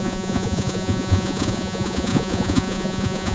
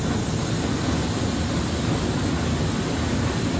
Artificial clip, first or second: first